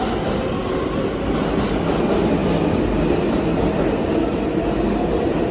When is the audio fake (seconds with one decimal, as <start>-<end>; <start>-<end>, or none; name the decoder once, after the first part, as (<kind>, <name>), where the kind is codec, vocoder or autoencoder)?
none